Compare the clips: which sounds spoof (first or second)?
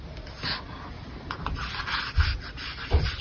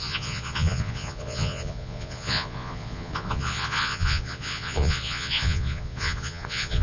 second